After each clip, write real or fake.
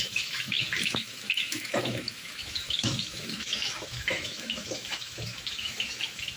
fake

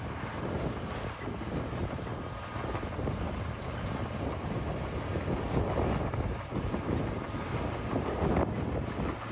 real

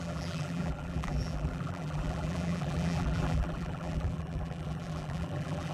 fake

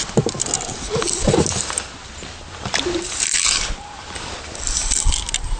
real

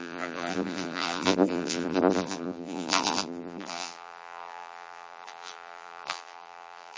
fake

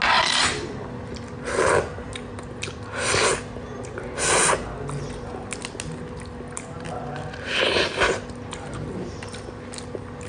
real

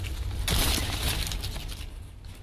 real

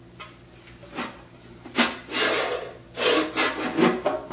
real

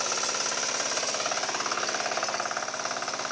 real